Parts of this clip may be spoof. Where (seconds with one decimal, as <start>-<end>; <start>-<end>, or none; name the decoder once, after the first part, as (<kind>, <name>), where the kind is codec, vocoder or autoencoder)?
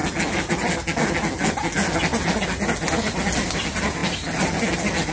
none